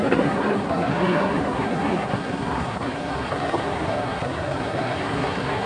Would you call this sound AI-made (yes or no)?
yes